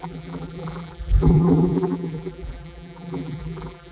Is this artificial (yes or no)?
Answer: yes